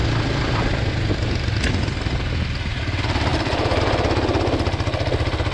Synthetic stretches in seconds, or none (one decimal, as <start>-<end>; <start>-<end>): none